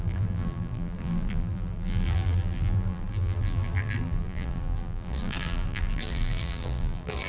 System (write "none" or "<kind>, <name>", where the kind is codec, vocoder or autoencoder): vocoder, BigVGAN v2